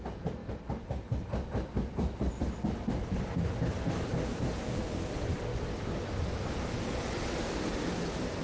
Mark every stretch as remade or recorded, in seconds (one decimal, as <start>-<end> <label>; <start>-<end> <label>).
0.0-8.4 recorded